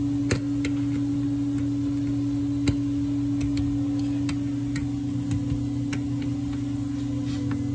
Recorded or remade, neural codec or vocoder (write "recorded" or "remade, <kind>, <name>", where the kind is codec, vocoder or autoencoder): recorded